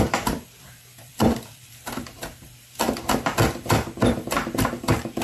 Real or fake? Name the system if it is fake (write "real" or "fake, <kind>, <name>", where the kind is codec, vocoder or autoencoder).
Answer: fake, vocoder, BigVGAN v2